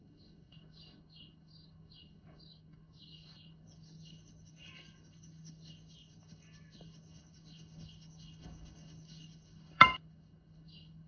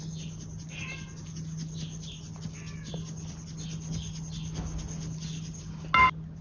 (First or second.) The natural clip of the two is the second